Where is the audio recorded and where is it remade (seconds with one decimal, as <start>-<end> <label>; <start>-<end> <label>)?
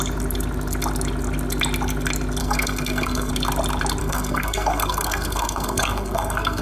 0.0-2.4 recorded; 2.4-3.3 remade; 3.3-4.0 recorded; 4.0-6.6 remade